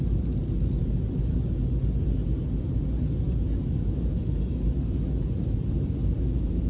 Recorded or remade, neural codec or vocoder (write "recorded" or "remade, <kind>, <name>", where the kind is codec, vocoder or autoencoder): recorded